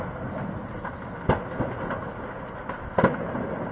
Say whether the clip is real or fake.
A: real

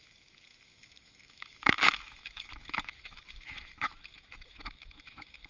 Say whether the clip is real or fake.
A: fake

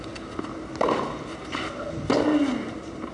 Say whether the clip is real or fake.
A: real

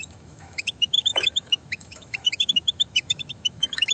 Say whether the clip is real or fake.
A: fake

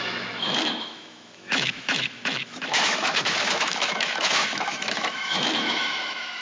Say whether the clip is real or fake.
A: fake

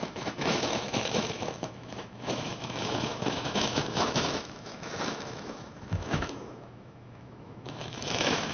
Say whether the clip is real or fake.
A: fake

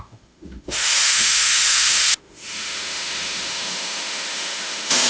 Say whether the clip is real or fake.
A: fake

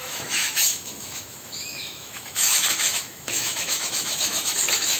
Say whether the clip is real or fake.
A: fake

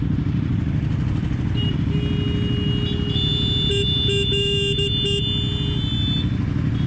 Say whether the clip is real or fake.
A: real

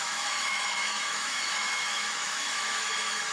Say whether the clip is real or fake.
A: fake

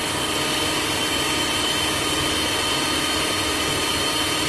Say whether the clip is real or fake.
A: real